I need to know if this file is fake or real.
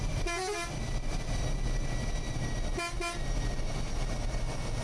real